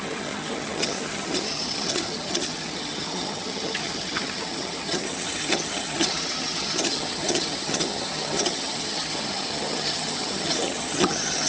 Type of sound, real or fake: fake